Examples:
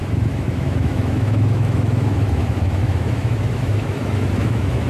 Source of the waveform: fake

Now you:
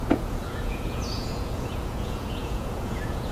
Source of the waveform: fake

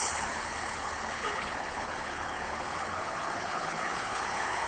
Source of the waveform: fake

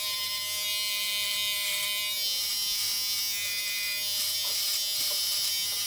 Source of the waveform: real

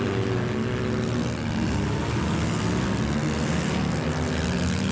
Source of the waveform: real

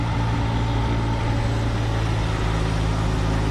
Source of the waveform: real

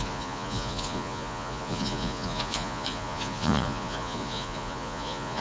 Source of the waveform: fake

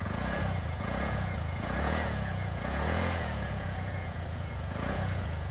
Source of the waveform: fake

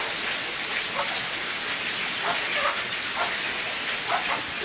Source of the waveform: real